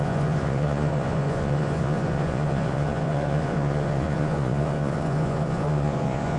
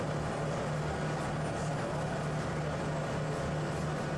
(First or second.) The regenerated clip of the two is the first